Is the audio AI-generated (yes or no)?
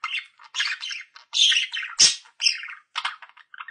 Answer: no